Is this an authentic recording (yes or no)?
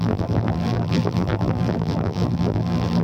no